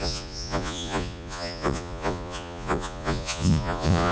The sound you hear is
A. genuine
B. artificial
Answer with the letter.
B